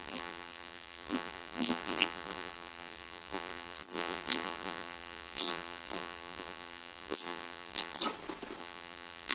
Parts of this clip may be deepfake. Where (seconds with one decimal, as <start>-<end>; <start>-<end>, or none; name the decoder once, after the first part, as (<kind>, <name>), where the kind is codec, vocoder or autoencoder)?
0.0-8.0 (vocoder, BigVGAN v2); 8.6-9.3